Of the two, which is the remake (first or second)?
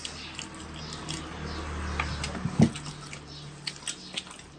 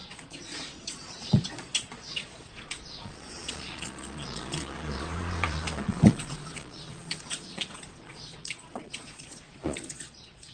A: second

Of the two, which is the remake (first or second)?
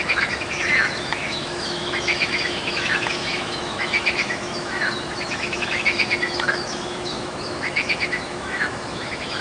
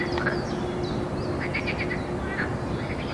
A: first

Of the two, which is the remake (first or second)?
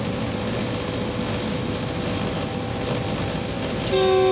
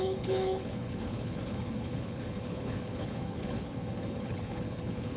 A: second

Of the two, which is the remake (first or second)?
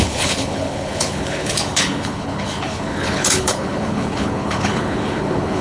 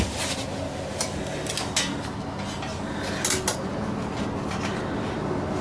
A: first